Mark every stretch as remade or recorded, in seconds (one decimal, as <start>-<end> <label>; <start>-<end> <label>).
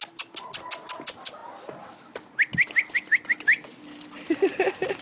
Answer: 0.0-5.0 recorded